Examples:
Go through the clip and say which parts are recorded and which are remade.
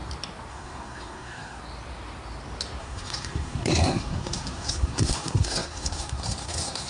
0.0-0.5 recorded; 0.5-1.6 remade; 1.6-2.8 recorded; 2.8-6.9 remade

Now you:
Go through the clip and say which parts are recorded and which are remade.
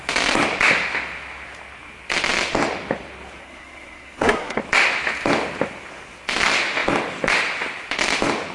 0.0-3.4 recorded; 3.4-4.6 remade; 4.6-8.5 recorded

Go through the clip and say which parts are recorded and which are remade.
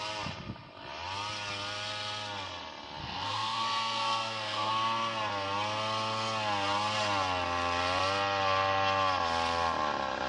0.0-3.0 recorded; 3.0-4.7 remade; 4.7-10.3 recorded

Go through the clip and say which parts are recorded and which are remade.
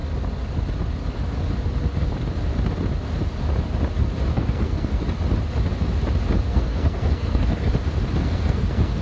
0.0-4.3 recorded; 4.3-5.0 remade; 5.0-6.5 recorded; 6.5-7.7 remade; 7.7-8.2 recorded; 8.2-9.0 remade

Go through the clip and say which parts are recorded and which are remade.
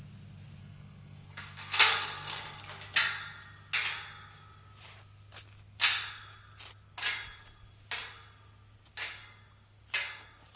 0.0-0.6 recorded; 0.6-2.6 remade; 2.6-10.6 recorded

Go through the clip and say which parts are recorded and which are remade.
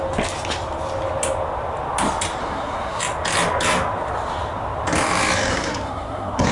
0.0-2.4 recorded; 2.4-3.0 remade; 3.0-5.5 recorded; 5.5-6.5 remade